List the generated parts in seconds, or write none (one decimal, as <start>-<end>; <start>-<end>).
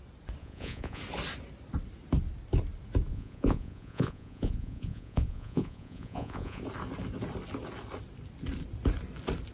0.4-1.0; 3.1-6.6